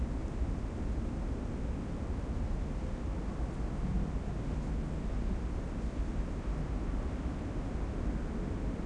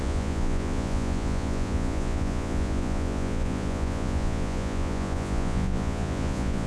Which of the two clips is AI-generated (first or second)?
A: second